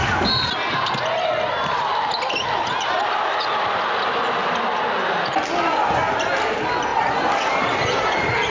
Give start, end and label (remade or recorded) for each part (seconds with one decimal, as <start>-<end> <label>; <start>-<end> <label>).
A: 0.0-8.5 recorded